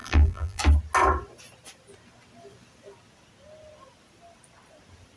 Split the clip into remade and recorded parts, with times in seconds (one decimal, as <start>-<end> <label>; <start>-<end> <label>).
0.0-0.6 remade; 0.6-5.2 recorded